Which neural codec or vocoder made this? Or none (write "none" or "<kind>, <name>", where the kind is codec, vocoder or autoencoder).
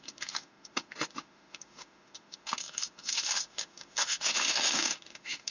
autoencoder, DAC-VAE